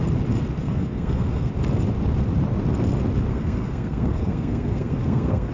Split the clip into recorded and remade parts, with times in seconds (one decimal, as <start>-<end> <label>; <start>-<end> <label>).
0.0-0.6 recorded; 0.6-1.5 remade; 1.5-3.3 recorded; 3.3-5.5 remade